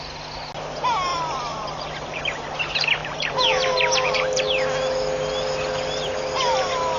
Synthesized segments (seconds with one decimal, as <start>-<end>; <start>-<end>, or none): 1.1-2.2; 3.0-4.4